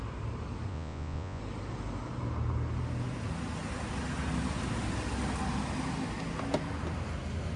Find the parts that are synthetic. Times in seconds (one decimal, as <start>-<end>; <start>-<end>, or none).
0.7-1.4